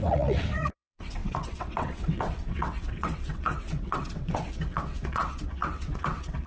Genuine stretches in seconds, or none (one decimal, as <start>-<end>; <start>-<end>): none